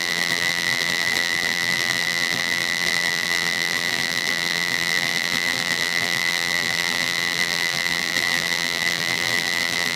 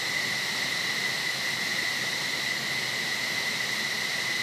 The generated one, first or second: first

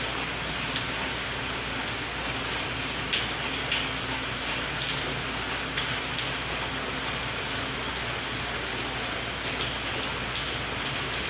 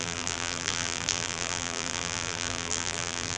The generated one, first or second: second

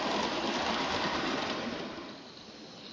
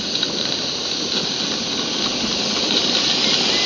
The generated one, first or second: first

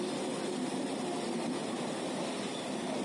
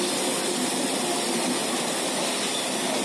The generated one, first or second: first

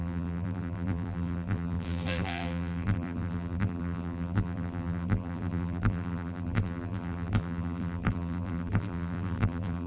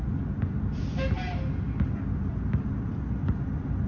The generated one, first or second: first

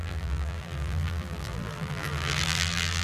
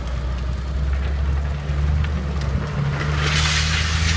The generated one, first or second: first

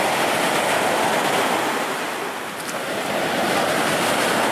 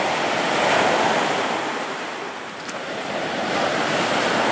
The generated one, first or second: second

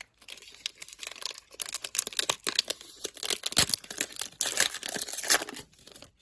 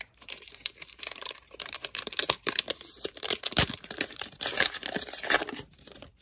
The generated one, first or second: second